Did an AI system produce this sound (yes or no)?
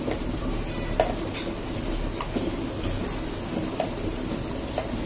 no